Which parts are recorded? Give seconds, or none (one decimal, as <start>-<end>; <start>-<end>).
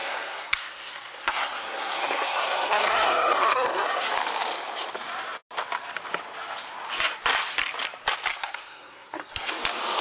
4.1-8.3; 9.5-10.0